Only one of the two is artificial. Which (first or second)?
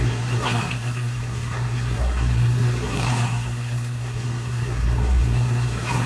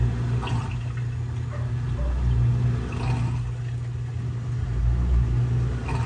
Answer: first